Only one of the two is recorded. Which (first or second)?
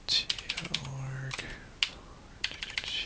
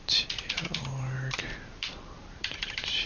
first